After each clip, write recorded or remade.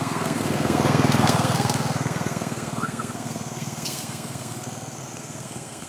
remade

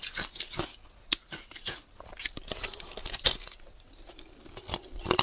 recorded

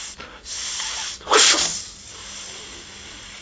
recorded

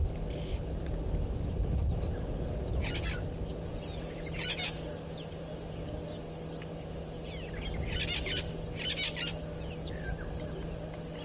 recorded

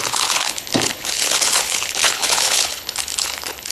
remade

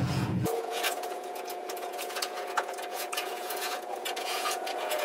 remade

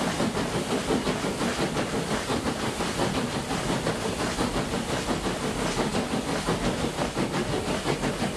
recorded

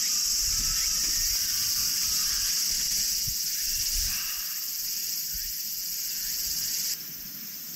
recorded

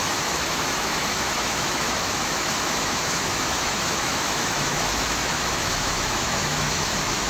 remade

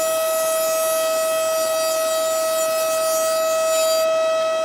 recorded